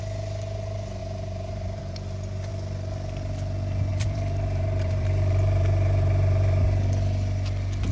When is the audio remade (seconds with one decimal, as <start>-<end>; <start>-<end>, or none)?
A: 1.0-2.5; 3.9-6.6